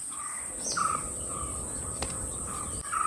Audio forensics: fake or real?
real